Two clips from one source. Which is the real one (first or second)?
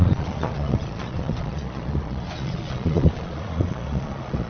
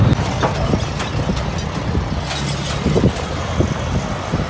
second